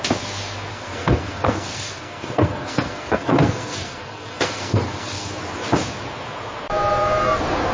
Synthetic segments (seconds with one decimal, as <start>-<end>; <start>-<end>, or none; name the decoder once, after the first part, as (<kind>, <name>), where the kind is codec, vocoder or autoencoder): 0.7-5.3 (codec, SNAC)